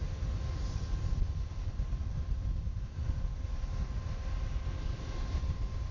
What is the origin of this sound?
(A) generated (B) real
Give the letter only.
B